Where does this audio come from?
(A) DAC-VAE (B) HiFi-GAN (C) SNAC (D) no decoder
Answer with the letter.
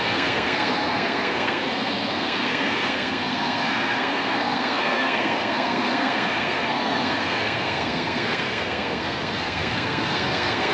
C